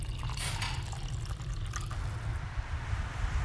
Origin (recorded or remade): recorded